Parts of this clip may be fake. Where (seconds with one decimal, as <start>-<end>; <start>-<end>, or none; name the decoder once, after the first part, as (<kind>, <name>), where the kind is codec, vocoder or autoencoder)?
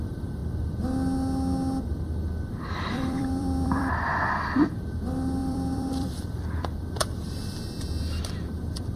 0.0-0.4 (vocoder, BigVGAN v2); 2.5-9.0